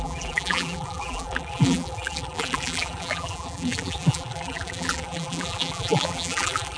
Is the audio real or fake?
fake